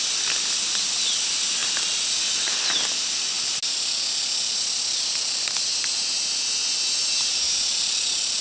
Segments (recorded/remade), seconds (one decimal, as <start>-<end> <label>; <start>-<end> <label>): 0.0-8.4 recorded